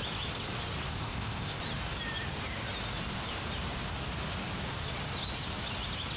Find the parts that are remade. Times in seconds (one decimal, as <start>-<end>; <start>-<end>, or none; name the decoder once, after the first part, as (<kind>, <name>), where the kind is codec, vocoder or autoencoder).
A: 0.9-1.6 (codec, ZipCodec)